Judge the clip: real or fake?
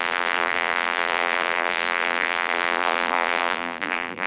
fake